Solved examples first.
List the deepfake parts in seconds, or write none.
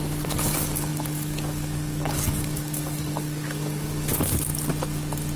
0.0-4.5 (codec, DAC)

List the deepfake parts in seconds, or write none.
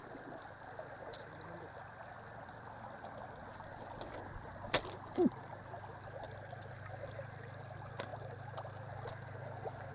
none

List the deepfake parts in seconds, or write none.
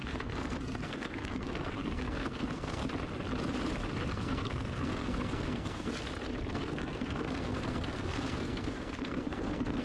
0.0-2.8 (codec, SNAC); 4.1-5.9; 6.5-9.8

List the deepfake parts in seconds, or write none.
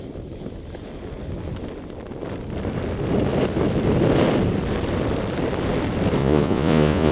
6.2-7.1 (vocoder, Vocos)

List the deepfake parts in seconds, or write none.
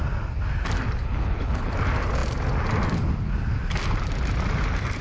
1.0-1.7 (codec, HILCodec)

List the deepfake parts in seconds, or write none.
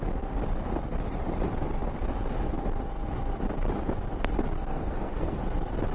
4.7-5.4 (codec, SNAC)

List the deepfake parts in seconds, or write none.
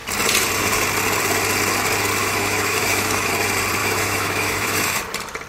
2.2-3.3 (autoencoder, DAC-VAE); 3.8-5.0